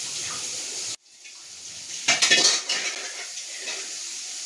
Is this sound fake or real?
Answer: real